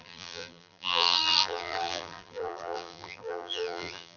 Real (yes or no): no